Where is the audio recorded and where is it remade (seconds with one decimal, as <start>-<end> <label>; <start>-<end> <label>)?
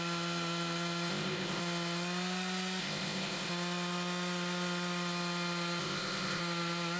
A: 0.0-1.1 recorded; 1.1-1.6 remade; 1.6-2.8 recorded; 2.8-3.5 remade; 3.5-5.8 recorded; 5.8-6.4 remade; 6.4-7.0 recorded